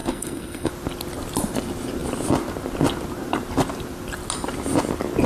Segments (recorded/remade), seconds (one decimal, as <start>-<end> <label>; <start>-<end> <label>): 0.0-0.7 remade; 0.7-5.3 recorded